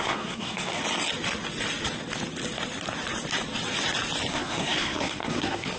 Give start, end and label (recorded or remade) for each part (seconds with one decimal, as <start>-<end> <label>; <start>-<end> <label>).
0.0-0.8 remade; 0.8-4.3 recorded; 4.3-5.8 remade